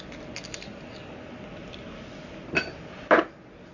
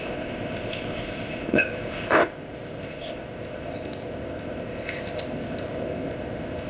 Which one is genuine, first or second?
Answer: first